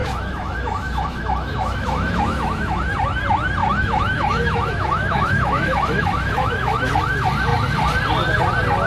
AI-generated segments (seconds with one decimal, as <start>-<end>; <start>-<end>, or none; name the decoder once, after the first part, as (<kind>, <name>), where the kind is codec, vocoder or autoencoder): 0.0-2.8 (autoencoder, DAC-VAE); 3.6-6.9